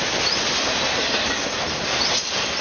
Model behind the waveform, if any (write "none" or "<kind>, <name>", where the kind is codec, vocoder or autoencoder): none